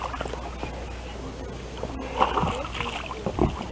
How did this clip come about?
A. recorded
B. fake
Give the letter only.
A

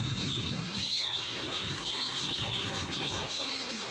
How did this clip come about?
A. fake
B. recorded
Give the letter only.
A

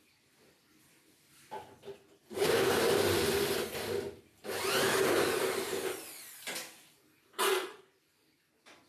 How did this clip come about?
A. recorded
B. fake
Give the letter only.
B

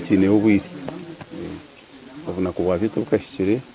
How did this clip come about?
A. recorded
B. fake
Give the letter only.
A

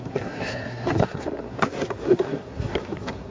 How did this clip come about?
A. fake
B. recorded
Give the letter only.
A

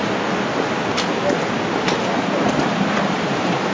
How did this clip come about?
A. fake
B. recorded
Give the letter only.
B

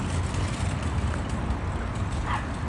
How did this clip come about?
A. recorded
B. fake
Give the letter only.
A